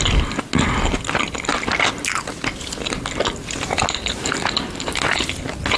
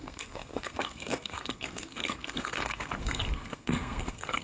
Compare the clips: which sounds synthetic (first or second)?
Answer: second